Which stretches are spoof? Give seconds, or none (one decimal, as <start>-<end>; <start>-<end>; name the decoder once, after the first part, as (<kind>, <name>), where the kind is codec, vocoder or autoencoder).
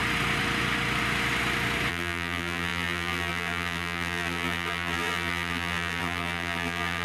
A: 1.9-7.0 (vocoder, BigVGAN v2)